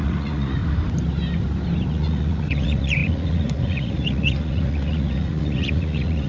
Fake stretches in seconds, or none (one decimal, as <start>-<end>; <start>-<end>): 0.0-0.6; 1.9-6.3